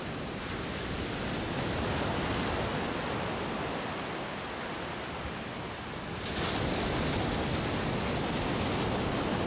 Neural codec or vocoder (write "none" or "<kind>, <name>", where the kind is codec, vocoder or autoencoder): none